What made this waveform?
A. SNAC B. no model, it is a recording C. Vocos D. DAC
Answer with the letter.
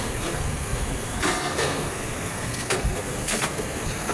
A